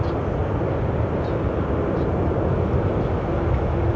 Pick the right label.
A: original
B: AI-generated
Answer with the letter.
A